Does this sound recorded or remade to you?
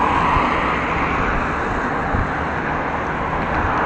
recorded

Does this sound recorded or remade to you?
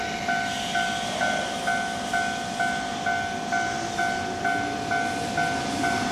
recorded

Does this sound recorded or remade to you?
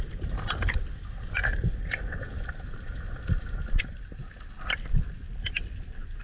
recorded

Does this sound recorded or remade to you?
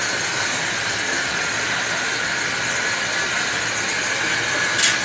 recorded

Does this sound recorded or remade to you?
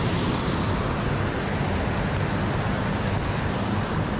recorded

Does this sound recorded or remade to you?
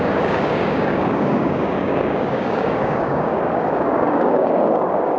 remade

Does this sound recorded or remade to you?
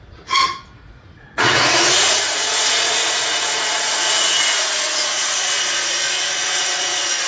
remade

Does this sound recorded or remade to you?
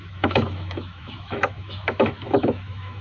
remade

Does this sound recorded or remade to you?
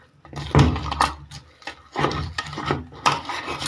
recorded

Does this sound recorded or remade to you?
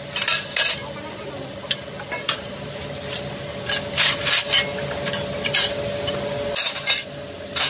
recorded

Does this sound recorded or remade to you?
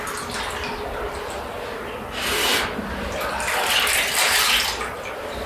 recorded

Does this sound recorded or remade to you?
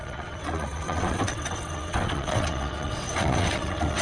remade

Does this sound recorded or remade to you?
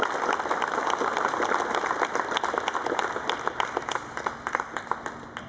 recorded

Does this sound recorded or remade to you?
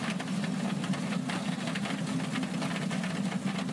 recorded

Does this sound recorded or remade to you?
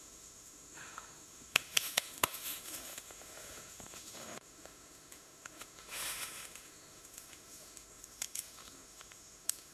remade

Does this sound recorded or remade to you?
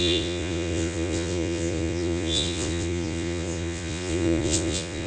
remade